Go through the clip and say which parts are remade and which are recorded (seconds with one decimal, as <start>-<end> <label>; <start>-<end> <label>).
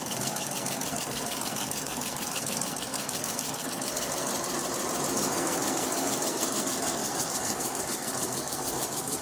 0.0-4.3 remade; 4.3-5.1 recorded; 5.1-9.2 remade